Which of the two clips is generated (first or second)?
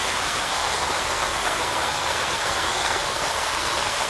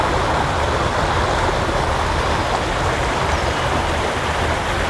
first